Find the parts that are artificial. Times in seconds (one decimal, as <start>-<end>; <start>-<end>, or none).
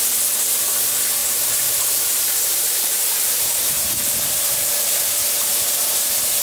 1.2-5.0